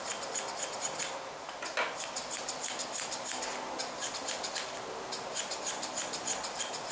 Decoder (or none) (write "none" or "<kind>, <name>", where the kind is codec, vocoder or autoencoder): none